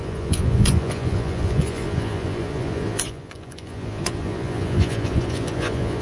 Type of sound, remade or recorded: remade